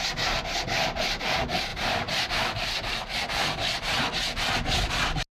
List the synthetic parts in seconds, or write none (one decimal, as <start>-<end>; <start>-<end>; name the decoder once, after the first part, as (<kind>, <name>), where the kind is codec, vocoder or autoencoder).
none